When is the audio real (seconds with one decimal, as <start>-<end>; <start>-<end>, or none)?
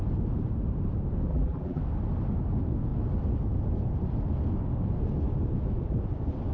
0.0-1.3; 1.8-6.5